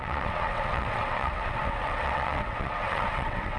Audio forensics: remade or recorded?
remade